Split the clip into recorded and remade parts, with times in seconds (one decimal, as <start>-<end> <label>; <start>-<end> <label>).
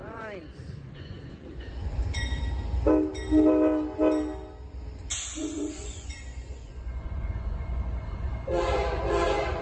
0.0-2.4 remade; 2.4-5.4 recorded; 5.4-9.6 remade